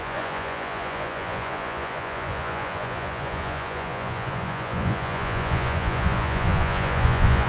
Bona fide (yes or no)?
no